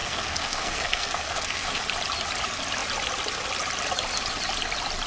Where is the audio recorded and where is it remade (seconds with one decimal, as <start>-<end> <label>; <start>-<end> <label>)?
0.0-1.8 remade; 1.8-5.1 recorded